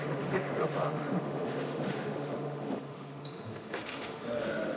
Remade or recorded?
remade